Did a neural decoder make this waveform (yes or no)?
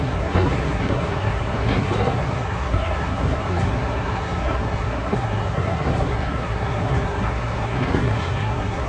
yes